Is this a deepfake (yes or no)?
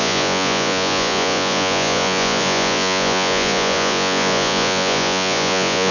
yes